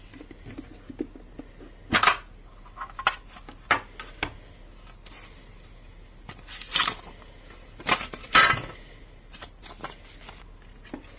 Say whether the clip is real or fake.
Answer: real